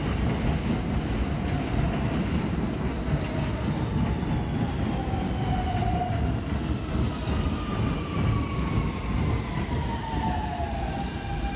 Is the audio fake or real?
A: real